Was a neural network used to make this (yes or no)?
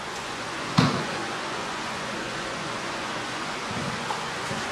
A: yes